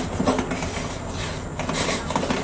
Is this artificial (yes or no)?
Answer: no